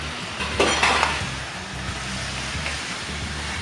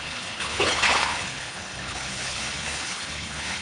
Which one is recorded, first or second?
first